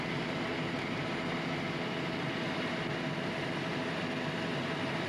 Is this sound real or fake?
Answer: real